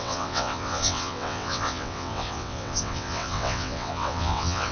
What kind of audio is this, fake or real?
fake